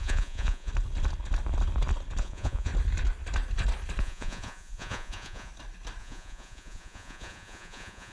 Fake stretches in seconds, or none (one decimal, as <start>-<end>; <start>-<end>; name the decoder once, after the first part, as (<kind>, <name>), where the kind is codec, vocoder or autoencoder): 0.0-0.7 (vocoder, Vocos); 2.2-2.7; 4.0-5.5; 6.0-8.1